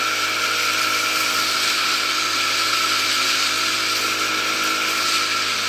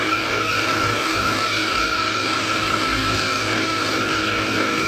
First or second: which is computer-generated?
second